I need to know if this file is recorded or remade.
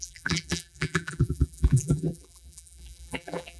remade